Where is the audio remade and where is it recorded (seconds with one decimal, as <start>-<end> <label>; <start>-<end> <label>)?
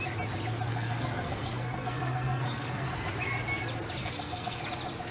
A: 0.0-0.7 recorded; 0.7-2.9 remade; 2.9-4.0 recorded; 4.0-4.6 remade; 4.6-5.1 recorded